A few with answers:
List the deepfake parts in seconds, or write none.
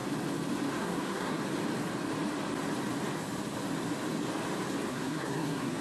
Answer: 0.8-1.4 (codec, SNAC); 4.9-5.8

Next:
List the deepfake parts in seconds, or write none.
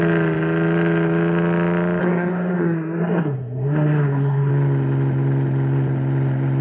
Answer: 2.0-4.5 (codec, SNAC)